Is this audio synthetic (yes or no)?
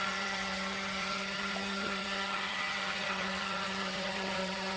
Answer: yes